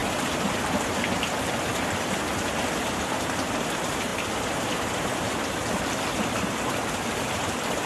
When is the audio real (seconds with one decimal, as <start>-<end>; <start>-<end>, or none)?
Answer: none